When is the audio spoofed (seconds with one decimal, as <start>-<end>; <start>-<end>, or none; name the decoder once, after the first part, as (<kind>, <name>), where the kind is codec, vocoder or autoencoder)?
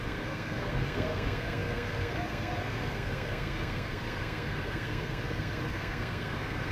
0.0-6.7 (codec, SNAC)